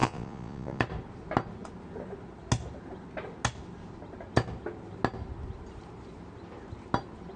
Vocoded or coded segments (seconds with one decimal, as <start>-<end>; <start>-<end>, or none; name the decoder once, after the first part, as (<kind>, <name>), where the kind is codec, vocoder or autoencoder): 0.0-0.8 (vocoder, Vocos)